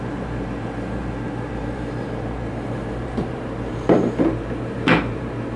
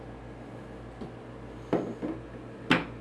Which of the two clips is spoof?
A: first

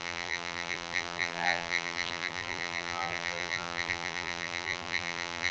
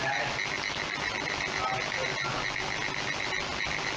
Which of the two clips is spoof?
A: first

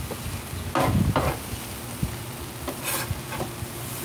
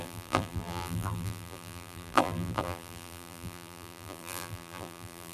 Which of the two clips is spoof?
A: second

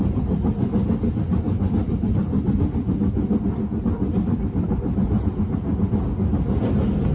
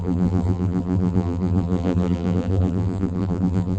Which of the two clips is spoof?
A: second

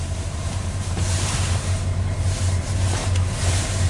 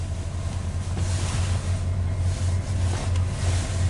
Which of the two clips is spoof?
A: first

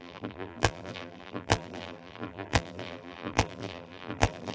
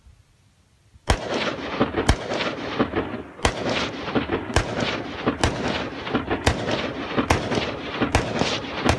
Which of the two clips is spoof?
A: first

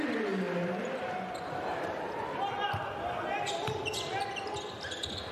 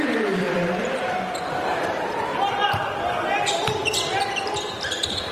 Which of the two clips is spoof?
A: second